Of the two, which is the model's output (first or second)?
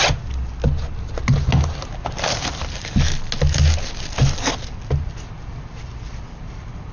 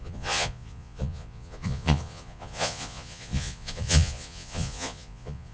second